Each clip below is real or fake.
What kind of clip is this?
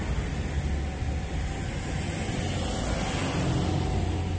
real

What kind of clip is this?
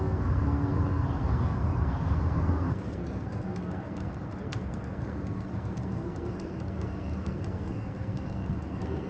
fake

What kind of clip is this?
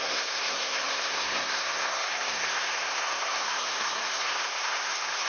fake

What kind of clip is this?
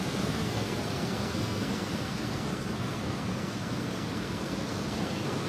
fake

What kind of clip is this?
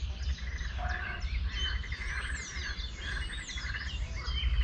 real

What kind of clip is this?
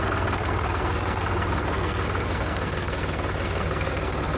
fake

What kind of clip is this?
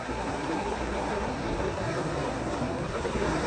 fake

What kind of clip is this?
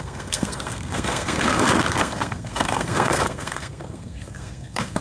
fake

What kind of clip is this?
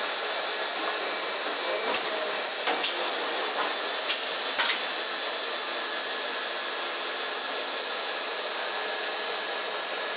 real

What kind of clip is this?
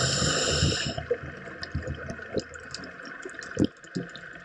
real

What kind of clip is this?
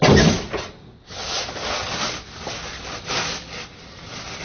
real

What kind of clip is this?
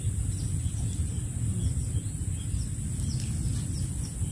real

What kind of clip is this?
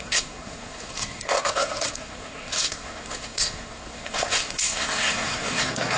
fake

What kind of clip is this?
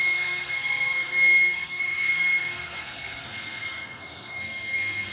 fake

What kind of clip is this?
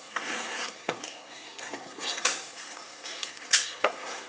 fake